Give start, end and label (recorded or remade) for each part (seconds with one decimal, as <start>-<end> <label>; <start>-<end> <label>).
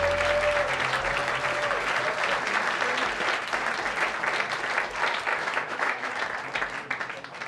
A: 0.0-5.3 recorded; 5.3-6.1 remade; 6.1-7.5 recorded